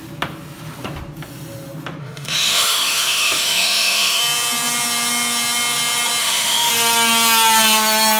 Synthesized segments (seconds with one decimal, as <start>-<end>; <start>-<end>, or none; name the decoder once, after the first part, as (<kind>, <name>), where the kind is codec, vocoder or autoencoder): 2.0-4.2 (autoencoder, DAC-VAE); 6.2-6.7